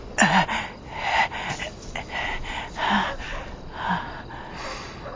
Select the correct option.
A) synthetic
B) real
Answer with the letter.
B